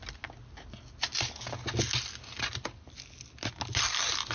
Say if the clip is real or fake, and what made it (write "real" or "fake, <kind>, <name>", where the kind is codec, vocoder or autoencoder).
real